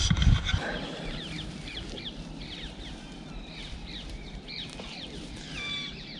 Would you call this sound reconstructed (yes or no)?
yes